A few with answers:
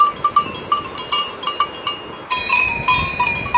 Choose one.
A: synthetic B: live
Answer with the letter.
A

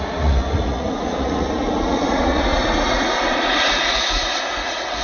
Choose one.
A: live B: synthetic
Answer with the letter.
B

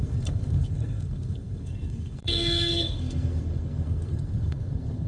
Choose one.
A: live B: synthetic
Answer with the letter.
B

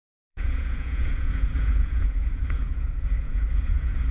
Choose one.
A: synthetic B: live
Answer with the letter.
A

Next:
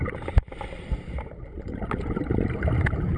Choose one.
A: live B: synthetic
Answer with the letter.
A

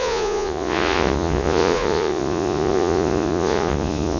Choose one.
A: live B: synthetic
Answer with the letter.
B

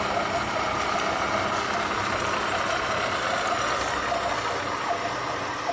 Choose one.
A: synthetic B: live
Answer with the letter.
B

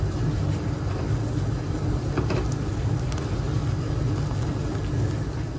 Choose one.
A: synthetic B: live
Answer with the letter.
B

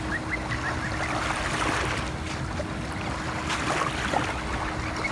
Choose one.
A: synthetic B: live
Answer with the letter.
B